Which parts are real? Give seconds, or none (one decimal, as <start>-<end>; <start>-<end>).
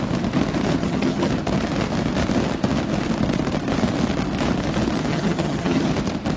0.0-0.8; 1.3-5.1; 5.9-6.4